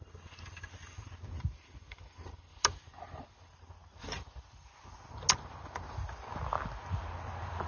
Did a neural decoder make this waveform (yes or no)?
no